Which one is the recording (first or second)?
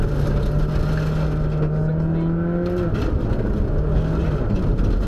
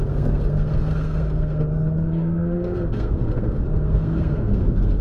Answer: first